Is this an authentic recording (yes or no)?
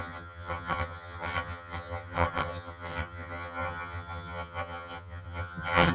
no